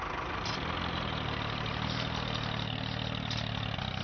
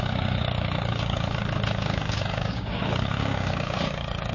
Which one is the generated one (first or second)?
second